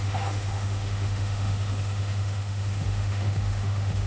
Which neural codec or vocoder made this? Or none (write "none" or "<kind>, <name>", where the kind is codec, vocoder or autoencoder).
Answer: autoencoder, DAC-VAE